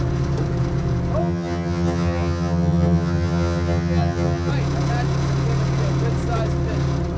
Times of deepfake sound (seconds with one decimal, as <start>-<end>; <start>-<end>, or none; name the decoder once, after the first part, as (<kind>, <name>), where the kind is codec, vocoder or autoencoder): 1.2-4.5 (vocoder, HiFi-GAN)